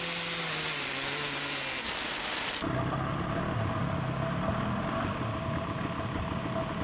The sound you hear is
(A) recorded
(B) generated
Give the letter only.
A